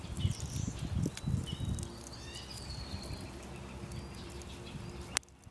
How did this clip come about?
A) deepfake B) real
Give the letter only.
B